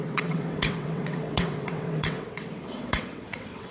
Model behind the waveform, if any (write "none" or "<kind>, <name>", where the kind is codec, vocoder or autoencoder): vocoder, WaveNeXt